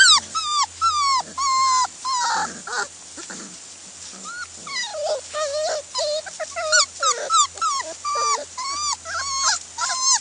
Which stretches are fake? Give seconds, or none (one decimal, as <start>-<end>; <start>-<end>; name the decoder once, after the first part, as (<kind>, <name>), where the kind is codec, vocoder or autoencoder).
none